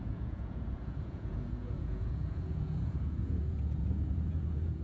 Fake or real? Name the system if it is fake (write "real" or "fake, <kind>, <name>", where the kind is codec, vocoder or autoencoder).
fake, vocoder, Vocos